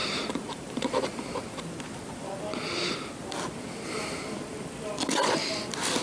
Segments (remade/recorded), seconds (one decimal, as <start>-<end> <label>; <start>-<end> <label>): 0.0-1.2 remade; 1.2-6.0 recorded